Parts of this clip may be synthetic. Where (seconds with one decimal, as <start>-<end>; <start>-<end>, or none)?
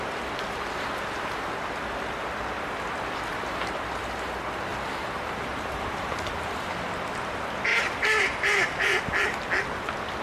3.3-3.8; 4.7-5.7; 7.7-9.0